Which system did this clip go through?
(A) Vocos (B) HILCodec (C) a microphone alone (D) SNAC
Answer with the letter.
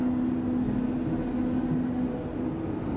C